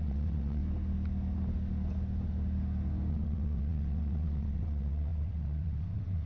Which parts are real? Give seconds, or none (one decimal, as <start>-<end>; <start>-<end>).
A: 0.6-3.1